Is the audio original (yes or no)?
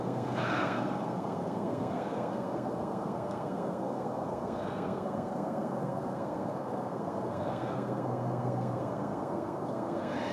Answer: no